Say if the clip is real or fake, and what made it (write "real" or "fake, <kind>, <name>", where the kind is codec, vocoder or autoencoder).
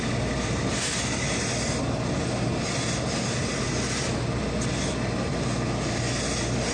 real